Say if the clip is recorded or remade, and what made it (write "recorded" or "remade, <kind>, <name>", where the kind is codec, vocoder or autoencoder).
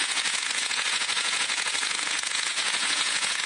remade, vocoder, Vocos